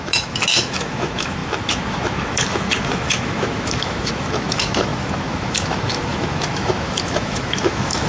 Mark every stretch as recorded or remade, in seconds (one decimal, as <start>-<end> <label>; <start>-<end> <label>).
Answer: 0.0-8.1 remade